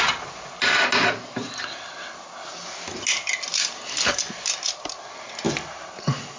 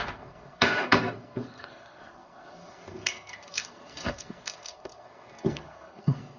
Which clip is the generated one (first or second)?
second